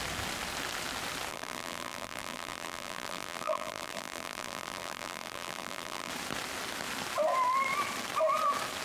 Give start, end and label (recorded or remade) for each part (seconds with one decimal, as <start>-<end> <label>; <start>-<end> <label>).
0.0-1.3 recorded; 1.3-6.1 remade; 6.1-8.8 recorded